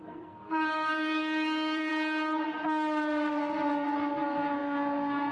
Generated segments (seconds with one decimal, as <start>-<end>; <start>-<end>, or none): 0.0-1.9; 3.3-5.3